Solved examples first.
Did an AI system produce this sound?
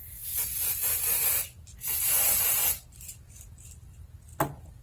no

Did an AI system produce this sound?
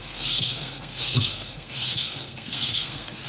yes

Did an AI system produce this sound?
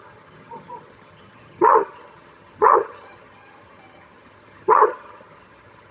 yes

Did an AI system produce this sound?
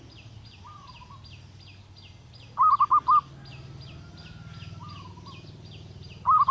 no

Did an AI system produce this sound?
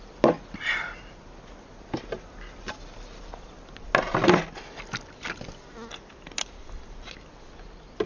no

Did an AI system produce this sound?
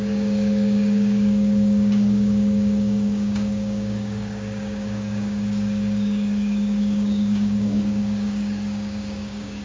yes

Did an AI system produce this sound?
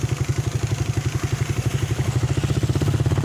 no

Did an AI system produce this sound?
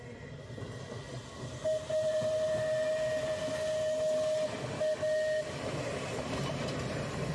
no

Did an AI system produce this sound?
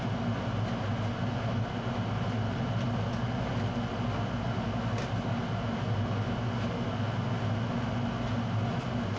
no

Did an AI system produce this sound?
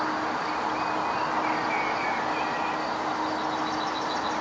no